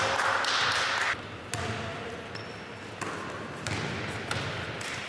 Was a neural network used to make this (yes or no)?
no